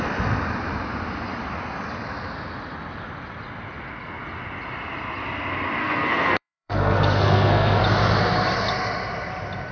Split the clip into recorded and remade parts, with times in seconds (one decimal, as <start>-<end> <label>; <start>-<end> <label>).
0.0-5.8 recorded; 5.8-7.8 remade; 7.8-9.7 recorded